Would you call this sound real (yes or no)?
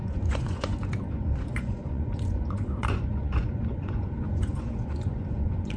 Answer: no